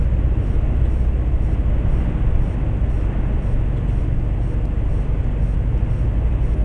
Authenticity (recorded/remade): recorded